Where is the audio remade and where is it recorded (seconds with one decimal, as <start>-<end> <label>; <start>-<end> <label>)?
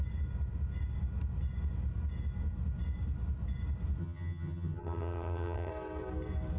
0.0-4.0 recorded; 4.0-5.7 remade; 5.7-6.6 recorded